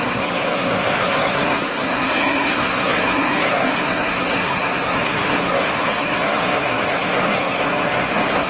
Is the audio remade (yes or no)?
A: yes